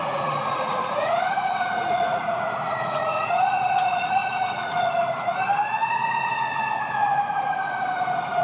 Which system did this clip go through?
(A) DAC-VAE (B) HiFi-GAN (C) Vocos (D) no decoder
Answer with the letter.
C